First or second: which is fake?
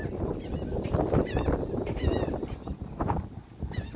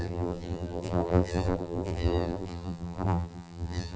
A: second